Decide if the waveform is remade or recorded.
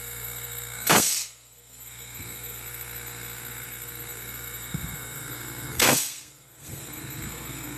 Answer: remade